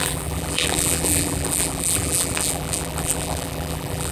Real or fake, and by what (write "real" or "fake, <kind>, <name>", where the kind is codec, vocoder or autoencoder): fake, vocoder, BigVGAN v2